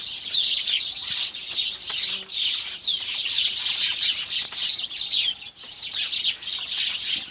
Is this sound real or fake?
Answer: real